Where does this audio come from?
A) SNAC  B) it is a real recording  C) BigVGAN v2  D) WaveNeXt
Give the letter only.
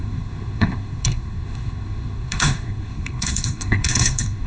A